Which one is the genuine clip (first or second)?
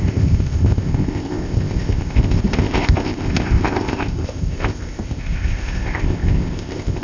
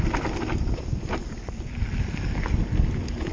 second